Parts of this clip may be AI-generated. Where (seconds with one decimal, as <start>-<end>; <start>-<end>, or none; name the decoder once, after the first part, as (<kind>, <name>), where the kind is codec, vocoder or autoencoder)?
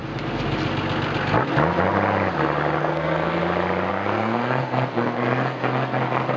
2.8-3.4 (codec, SNAC); 3.9-6.4